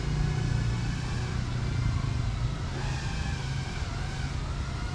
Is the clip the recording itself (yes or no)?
yes